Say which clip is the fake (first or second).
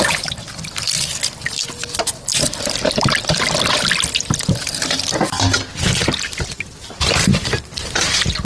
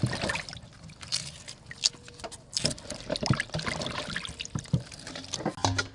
first